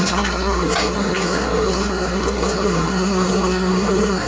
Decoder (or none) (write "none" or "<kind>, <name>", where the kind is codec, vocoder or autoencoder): codec, SNAC